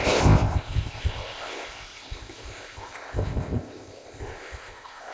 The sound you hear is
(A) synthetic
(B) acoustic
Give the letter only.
A